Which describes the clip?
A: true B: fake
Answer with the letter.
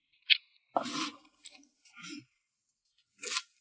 A